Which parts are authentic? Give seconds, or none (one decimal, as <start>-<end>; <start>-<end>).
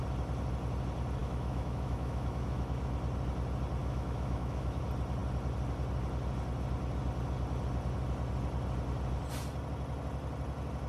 0.0-1.2; 2.8-3.8; 4.8-10.9